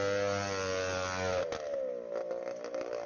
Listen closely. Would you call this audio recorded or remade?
recorded